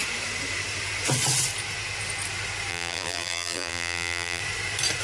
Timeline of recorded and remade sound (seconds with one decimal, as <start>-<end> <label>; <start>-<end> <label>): 0.0-2.7 recorded; 2.7-4.4 remade; 4.4-5.0 recorded